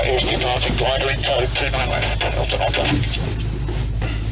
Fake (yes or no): no